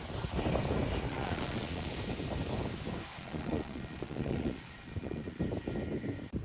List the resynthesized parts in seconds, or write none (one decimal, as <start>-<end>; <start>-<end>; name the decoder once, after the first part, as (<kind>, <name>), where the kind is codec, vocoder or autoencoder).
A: 1.1-1.9 (vocoder, Vocos); 3.1-5.4